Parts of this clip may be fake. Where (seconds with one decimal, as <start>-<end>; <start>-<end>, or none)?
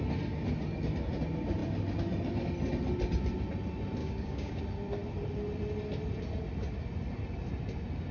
4.0-4.6